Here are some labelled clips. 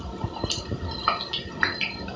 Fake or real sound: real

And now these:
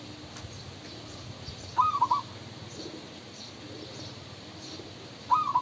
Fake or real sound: real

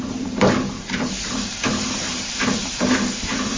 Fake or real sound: fake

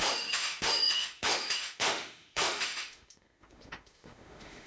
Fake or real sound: fake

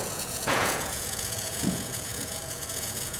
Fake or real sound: fake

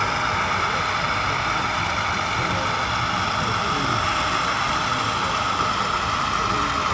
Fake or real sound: real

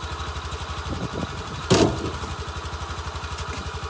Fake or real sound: real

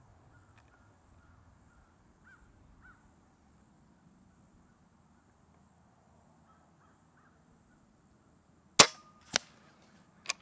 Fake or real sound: real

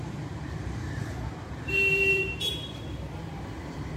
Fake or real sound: fake